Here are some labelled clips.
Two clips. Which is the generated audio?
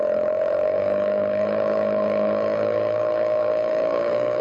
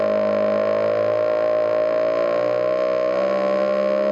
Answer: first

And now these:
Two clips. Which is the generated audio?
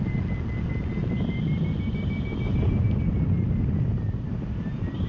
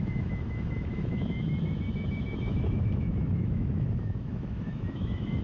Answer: second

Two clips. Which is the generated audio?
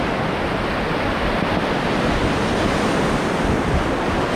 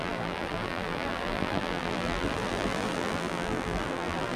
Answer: second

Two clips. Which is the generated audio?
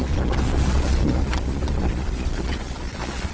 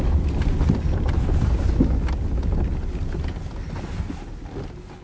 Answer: first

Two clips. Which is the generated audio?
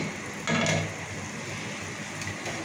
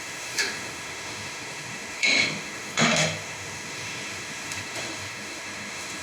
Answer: second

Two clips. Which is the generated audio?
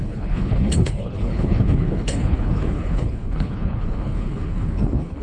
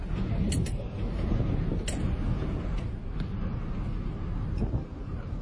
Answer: first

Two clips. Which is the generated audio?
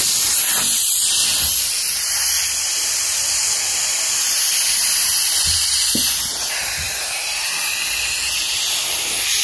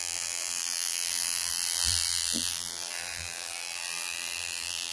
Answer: second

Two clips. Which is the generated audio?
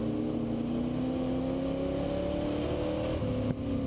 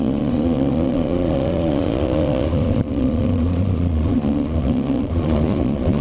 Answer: second